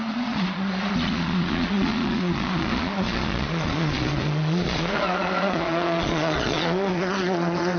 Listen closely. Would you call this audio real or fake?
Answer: fake